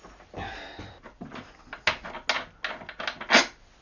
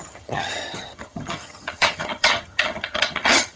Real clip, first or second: first